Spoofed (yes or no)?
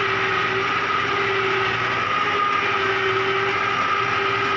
no